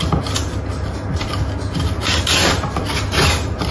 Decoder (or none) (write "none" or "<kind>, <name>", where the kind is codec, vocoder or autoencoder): none